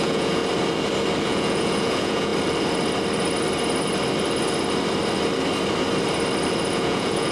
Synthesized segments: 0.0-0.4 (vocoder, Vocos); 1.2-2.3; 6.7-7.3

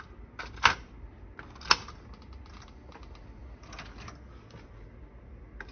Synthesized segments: none

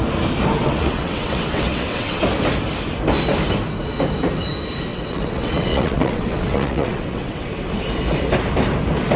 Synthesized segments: 0.6-2.2 (vocoder, WaveNeXt); 4.9-7.5

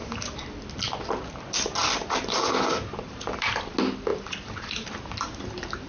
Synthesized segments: 0.0-0.6 (vocoder, BigVGAN v2); 1.8-3.5; 4.1-4.9

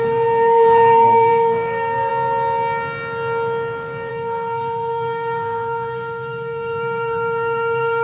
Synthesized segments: 0.0-2.1 (codec, SNAC); 4.1-8.0